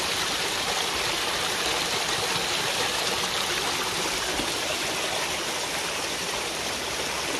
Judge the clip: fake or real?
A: real